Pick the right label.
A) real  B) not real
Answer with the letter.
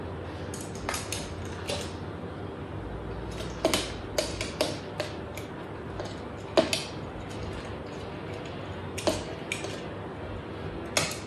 A